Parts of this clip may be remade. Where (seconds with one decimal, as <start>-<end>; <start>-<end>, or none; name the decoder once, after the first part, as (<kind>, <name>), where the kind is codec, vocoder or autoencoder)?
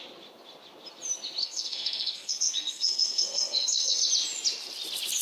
1.4-4.1 (codec, SNAC)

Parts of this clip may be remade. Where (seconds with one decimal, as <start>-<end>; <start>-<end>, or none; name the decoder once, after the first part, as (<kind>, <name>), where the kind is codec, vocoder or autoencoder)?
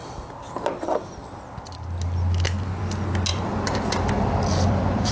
3.3-5.1 (vocoder, BigVGAN v2)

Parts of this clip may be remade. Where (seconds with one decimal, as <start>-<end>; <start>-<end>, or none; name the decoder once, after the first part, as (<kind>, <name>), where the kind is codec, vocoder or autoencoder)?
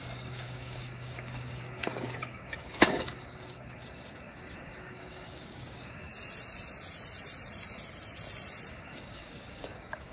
0.0-6.1 (codec, DAC); 8.7-10.1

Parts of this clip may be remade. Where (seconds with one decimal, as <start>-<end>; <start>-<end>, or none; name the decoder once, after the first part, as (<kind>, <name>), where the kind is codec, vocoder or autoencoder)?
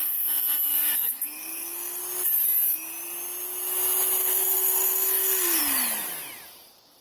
0.7-2.0 (codec, SNAC); 4.2-5.6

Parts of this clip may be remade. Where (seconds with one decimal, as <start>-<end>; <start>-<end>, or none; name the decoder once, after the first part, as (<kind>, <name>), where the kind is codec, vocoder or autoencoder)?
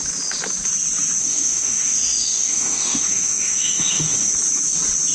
1.2-4.3 (autoencoder, DAC-VAE)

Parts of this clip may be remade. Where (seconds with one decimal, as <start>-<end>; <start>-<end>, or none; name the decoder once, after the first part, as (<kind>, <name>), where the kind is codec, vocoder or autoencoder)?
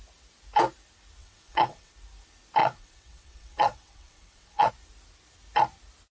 1.2-1.9 (vocoder, WaveNeXt); 2.6-4.7